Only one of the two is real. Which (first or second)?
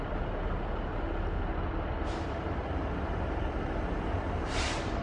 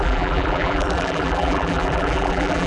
first